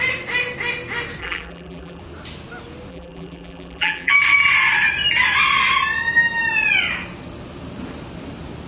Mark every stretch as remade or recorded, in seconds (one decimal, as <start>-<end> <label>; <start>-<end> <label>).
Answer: 0.0-1.2 recorded; 1.2-2.0 remade; 2.0-2.9 recorded; 2.9-4.1 remade; 4.1-8.7 recorded